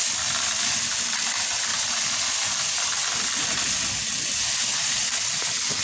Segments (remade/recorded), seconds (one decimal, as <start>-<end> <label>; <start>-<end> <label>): 0.0-1.7 recorded; 1.7-2.3 remade; 2.3-4.4 recorded; 4.4-5.0 remade; 5.0-5.8 recorded